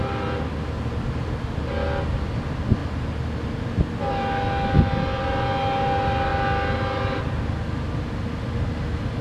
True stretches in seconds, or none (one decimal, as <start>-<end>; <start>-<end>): 0.0-9.2